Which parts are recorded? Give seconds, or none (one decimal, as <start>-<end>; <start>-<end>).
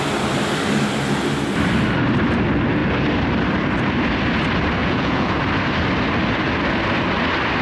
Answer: 0.0-4.8; 5.4-7.6